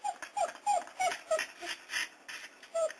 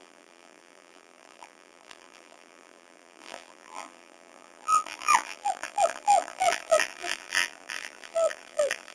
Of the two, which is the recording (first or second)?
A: first